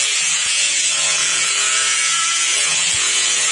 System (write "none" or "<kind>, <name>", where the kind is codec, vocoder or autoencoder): vocoder, Vocos